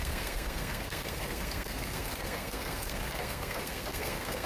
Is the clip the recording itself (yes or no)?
no